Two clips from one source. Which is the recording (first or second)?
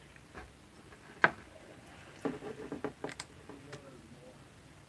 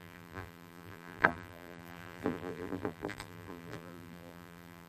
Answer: first